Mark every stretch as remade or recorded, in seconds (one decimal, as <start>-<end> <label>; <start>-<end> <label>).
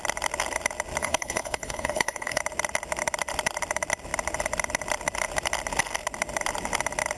0.0-1.0 recorded; 1.0-2.4 remade; 2.4-7.2 recorded